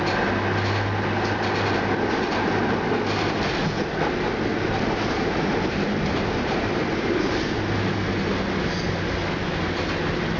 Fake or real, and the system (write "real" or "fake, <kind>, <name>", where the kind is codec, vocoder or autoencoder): real